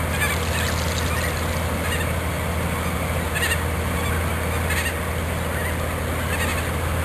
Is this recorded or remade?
recorded